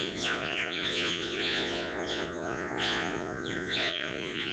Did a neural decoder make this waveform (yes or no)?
yes